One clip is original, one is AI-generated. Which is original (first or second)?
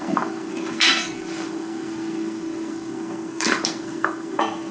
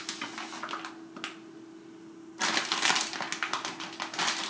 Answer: second